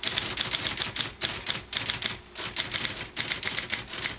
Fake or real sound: real